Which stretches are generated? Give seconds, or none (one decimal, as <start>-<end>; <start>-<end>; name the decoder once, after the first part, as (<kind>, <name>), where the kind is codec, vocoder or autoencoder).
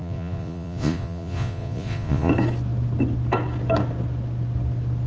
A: 0.0-2.3 (vocoder, Vocos)